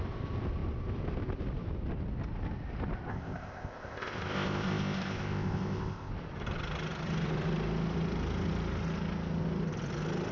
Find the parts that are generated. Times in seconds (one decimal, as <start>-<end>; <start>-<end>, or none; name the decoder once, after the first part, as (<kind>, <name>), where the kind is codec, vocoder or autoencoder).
3.1-6.1 (codec, ZipCodec)